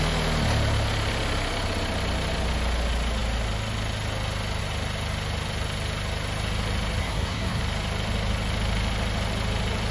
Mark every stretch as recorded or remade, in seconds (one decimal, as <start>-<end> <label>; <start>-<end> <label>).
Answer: 0.0-7.0 recorded; 7.0-7.6 remade; 7.6-9.9 recorded